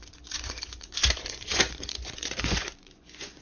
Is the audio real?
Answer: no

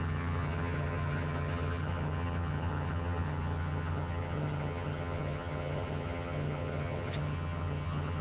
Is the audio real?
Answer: no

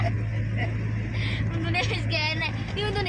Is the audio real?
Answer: yes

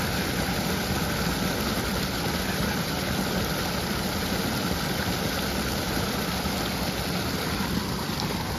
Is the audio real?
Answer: yes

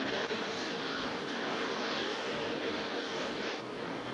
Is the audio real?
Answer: no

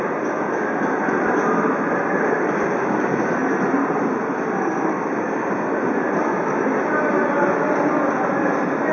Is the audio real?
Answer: yes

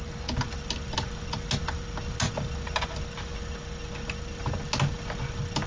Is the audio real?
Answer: yes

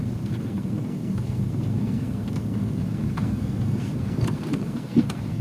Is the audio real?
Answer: no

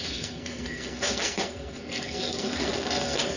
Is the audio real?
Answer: no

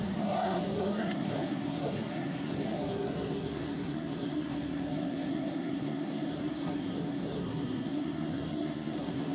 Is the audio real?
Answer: no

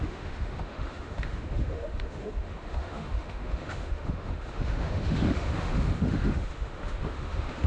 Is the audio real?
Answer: no